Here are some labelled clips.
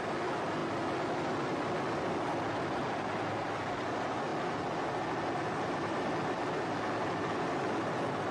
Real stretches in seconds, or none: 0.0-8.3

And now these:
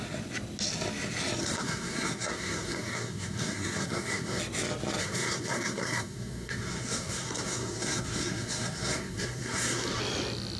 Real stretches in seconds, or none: 0.0-1.4; 4.4-5.0; 10.0-10.6

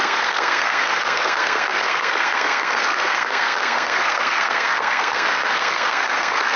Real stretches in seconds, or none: none

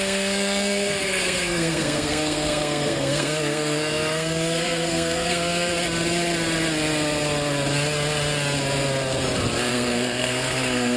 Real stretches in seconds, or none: 5.7-9.7

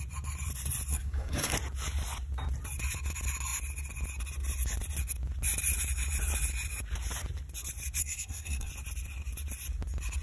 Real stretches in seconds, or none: 0.0-0.9; 1.5-8.0; 8.7-10.2